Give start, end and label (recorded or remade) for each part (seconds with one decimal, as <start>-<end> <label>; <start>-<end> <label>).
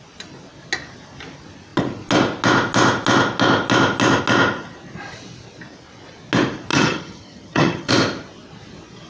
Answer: 0.0-6.7 recorded; 6.7-7.9 remade; 7.9-9.1 recorded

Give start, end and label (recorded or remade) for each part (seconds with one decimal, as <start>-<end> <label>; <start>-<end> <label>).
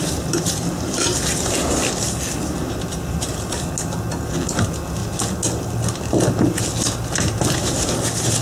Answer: 0.0-8.4 recorded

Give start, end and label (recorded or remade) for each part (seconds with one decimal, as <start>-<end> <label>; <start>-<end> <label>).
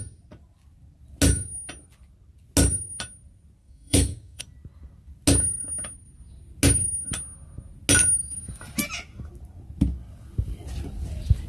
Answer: 0.0-3.6 recorded; 3.6-4.4 remade; 4.4-11.5 recorded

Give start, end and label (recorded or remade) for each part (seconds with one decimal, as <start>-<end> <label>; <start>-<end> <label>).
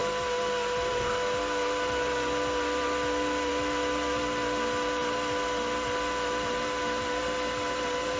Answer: 0.0-8.2 recorded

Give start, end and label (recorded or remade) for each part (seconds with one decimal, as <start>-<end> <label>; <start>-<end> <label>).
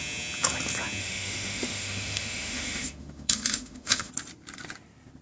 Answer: 0.0-1.0 recorded; 1.0-4.1 remade; 4.1-5.2 recorded